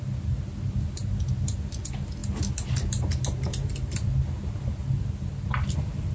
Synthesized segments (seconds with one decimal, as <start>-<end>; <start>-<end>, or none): none